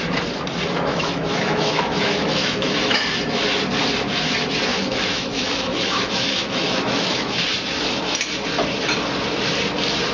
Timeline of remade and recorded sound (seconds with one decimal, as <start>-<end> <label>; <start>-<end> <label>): 0.0-0.9 recorded; 0.9-3.0 remade; 3.0-4.7 recorded; 4.7-7.4 remade; 7.4-10.1 recorded